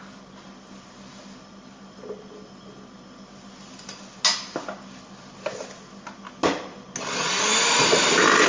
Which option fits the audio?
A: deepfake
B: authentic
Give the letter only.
B